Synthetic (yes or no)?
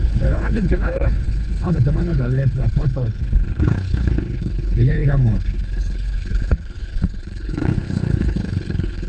yes